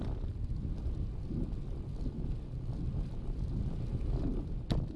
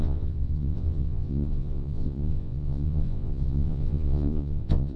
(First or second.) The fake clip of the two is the second